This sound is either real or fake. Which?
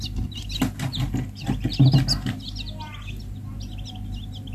real